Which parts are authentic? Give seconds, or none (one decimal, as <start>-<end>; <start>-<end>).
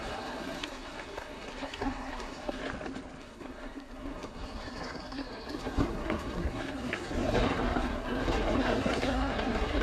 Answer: 2.6-3.2